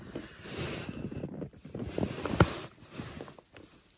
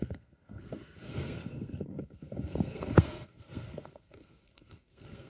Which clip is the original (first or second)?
first